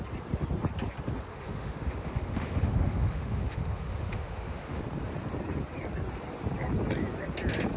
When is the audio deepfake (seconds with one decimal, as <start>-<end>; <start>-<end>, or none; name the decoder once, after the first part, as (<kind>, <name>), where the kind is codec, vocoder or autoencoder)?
1.3-4.8 (autoencoder, DAC-VAE)

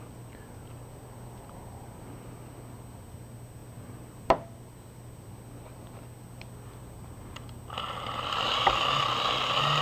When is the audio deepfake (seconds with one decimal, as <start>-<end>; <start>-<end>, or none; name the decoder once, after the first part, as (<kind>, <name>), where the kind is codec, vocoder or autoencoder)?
none